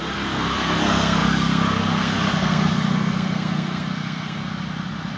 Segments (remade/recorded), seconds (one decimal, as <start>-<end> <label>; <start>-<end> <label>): 0.0-4.4 remade; 4.4-5.2 recorded